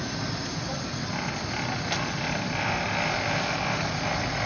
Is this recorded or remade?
recorded